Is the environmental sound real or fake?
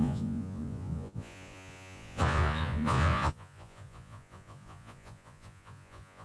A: fake